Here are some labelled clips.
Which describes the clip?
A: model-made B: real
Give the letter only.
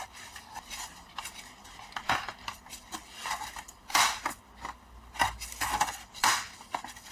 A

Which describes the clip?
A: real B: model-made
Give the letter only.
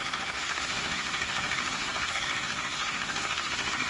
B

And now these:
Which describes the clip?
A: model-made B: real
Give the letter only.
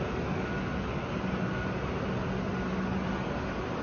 B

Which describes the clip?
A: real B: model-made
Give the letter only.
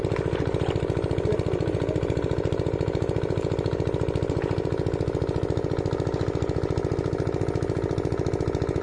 A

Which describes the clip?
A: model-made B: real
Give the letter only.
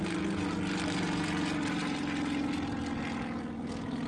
B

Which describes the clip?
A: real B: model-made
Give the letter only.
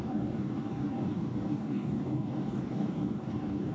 B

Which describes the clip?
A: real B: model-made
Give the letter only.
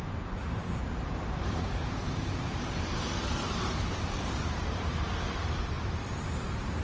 B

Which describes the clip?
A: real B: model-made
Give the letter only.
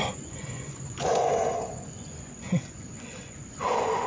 B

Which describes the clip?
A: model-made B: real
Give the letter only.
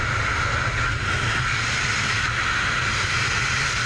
B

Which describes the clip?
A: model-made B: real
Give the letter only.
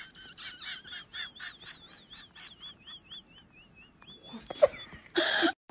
B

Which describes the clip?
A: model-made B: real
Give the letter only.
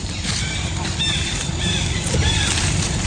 A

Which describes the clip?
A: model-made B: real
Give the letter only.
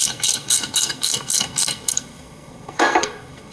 A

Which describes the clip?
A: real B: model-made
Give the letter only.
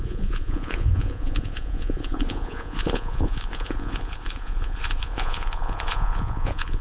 B